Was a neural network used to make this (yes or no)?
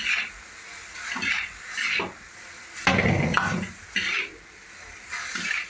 no